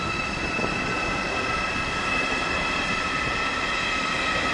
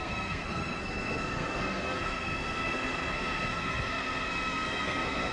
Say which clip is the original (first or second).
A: first